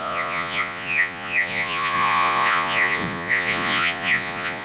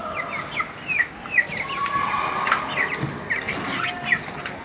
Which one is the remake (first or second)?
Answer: first